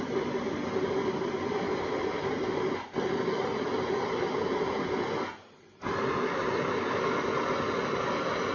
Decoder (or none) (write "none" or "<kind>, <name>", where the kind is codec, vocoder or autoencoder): none